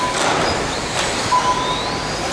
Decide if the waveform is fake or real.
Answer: real